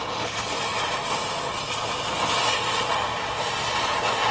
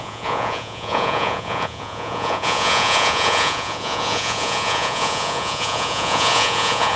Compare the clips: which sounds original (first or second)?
first